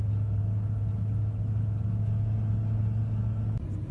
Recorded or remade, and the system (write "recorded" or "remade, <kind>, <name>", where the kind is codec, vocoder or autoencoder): recorded